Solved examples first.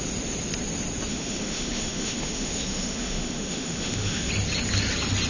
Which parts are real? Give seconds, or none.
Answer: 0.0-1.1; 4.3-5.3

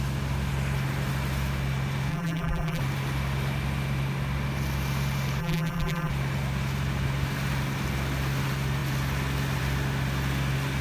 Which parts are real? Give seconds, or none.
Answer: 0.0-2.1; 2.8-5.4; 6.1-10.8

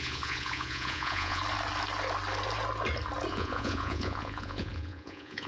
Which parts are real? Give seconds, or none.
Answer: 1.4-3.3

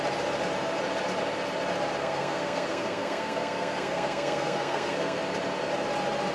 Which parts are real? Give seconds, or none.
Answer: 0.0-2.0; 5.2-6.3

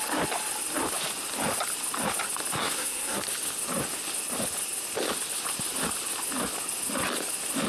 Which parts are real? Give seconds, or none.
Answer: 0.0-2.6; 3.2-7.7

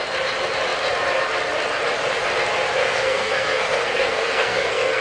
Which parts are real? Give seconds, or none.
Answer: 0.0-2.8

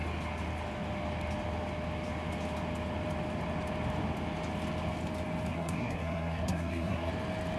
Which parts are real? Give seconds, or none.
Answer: 0.0-5.5; 7.1-7.6